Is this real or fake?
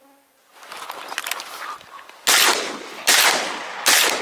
real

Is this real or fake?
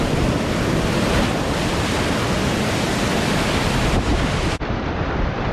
fake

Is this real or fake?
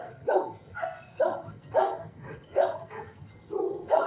fake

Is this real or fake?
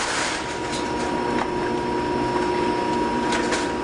real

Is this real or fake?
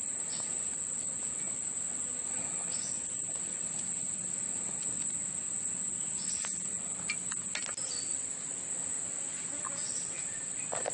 real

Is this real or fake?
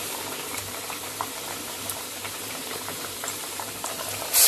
fake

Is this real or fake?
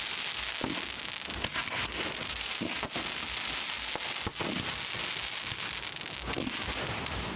real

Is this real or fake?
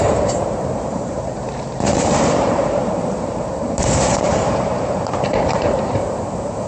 fake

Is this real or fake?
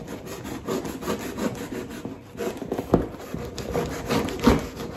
real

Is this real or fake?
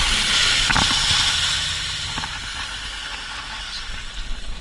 real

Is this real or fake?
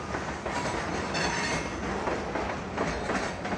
real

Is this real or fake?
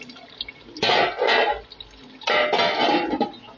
real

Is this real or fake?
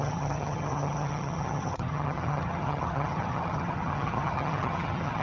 fake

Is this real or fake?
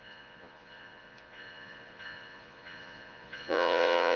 fake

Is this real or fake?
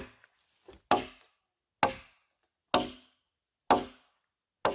real